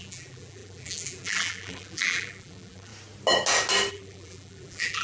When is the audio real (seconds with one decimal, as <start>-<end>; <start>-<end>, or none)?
2.9-3.9